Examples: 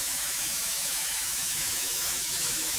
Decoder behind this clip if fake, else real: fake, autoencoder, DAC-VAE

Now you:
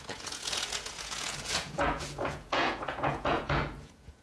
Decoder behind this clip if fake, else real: fake, vocoder, Vocos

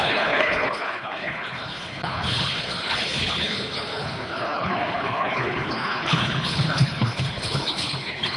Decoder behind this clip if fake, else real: fake, codec, HILCodec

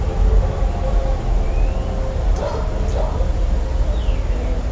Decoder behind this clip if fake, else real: real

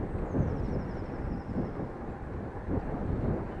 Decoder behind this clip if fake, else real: real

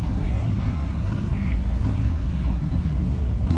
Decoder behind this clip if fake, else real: fake, codec, SNAC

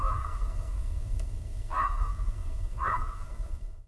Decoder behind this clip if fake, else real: fake, codec, SNAC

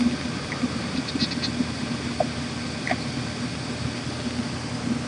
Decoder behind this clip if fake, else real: real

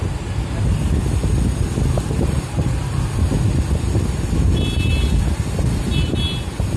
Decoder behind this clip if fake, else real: real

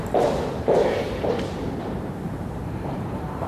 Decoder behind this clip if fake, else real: fake, vocoder, BigVGAN v2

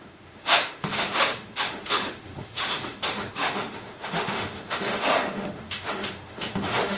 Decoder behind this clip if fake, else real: fake, autoencoder, DAC-VAE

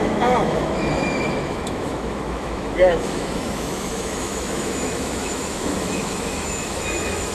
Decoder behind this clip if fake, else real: fake, autoencoder, DAC-VAE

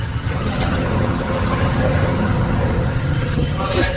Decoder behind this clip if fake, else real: fake, vocoder, HiFi-GAN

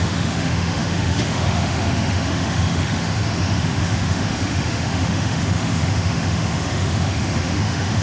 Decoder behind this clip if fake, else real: fake, autoencoder, DAC-VAE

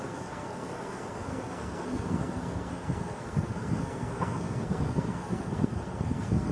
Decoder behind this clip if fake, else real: fake, codec, SNAC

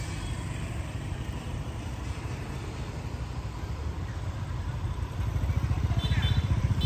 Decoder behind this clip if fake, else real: fake, vocoder, BigVGAN v2